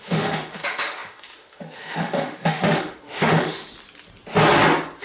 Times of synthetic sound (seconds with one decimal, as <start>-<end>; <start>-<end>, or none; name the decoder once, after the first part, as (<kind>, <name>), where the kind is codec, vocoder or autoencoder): 0.0-3.6 (autoencoder, DAC-VAE)

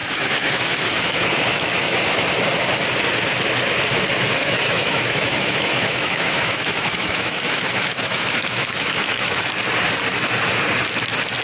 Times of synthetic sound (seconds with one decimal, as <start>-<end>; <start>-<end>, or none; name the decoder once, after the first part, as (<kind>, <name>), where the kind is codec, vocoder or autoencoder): 0.0-2.0 (autoencoder, DAC-VAE); 4.4-9.5

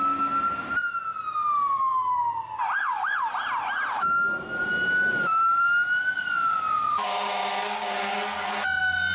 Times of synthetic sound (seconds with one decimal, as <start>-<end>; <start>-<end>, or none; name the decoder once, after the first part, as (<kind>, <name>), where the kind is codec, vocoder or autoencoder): none

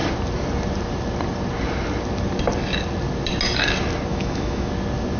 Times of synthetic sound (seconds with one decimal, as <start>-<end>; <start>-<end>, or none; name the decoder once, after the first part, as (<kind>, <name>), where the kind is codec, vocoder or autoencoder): 4.1-4.7 (autoencoder, DAC-VAE)